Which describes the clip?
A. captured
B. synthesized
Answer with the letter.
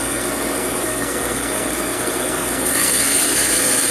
B